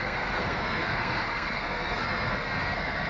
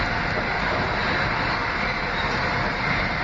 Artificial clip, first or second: first